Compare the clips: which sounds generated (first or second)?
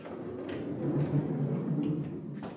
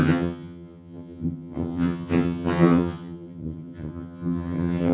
second